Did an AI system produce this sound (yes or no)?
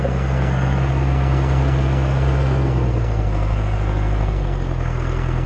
yes